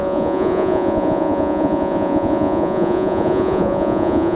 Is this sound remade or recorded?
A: remade